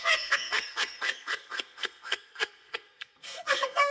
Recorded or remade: remade